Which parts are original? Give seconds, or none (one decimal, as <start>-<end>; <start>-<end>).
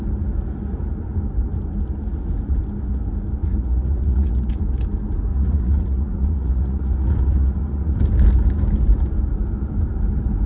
0.0-3.4; 4.6-5.3; 8.0-10.5